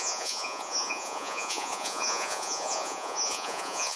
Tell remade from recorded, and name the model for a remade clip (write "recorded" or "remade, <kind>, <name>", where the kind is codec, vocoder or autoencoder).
remade, vocoder, Vocos